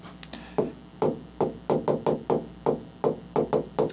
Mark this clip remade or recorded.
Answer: recorded